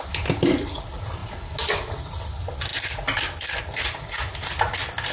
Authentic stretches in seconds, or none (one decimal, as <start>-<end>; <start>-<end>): 0.0-5.1